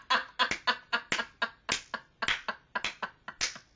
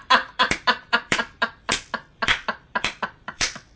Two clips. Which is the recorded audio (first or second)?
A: first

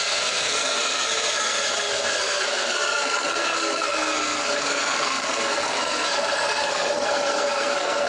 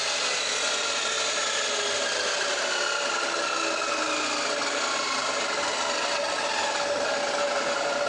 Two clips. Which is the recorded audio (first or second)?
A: second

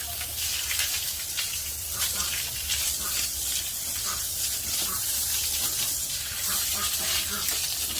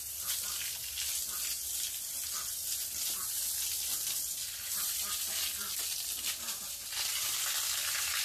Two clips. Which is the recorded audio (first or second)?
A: second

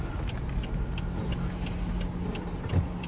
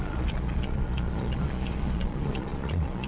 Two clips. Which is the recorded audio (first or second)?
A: first